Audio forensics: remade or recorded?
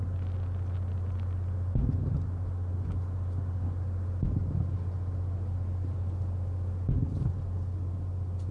recorded